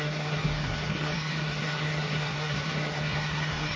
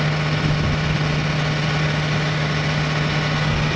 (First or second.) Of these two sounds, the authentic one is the second